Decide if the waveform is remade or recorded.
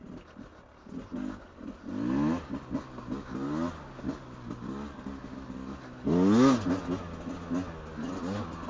recorded